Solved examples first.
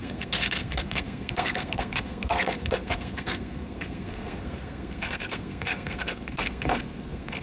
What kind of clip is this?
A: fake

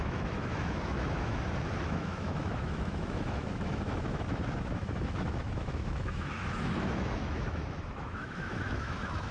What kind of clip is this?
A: fake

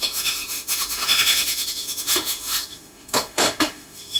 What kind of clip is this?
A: fake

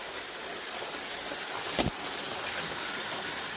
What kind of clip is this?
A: real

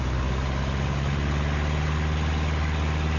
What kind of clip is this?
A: real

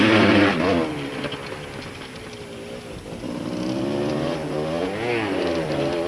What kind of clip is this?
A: real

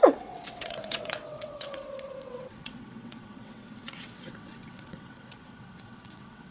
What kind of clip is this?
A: fake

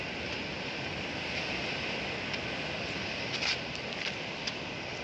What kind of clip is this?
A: real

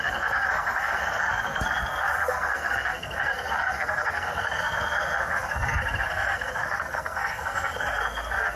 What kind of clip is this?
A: fake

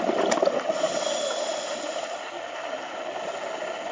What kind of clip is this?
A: real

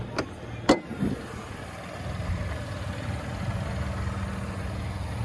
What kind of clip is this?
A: real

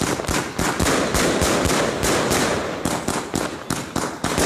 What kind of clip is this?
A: real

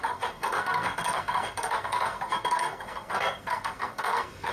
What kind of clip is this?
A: fake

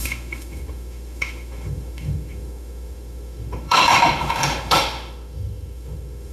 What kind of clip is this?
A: fake